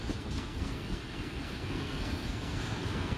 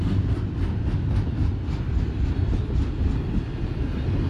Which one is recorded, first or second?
second